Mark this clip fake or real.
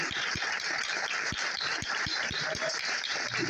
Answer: fake